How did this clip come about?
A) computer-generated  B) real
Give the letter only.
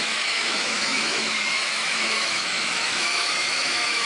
A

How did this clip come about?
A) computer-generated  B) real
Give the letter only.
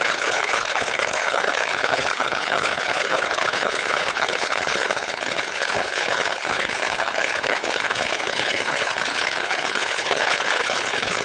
A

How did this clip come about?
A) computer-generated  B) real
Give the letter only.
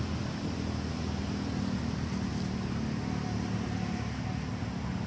B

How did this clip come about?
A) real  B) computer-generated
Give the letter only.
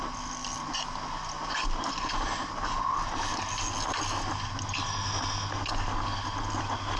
A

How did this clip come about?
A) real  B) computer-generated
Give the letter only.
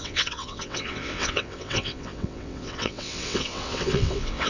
B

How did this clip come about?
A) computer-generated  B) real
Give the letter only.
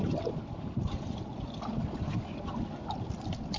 B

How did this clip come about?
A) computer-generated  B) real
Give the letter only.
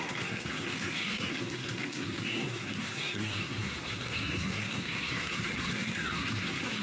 A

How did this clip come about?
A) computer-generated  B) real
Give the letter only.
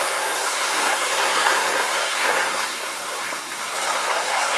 A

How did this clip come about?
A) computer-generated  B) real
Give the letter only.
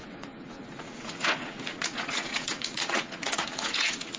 A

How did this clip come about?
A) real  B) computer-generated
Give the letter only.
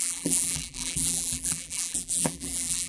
B